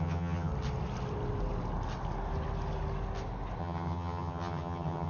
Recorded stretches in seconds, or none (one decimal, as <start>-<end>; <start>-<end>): 0.5-3.6